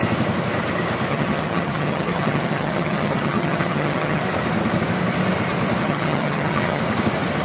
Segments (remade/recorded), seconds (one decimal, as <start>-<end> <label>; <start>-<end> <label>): 0.0-1.1 recorded; 1.1-4.2 remade; 4.2-5.8 recorded; 5.8-6.8 remade; 6.8-7.4 recorded